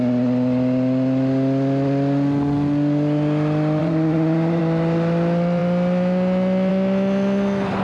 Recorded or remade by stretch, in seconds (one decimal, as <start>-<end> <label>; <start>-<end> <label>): 0.0-3.8 recorded; 3.8-4.6 remade; 4.6-7.8 recorded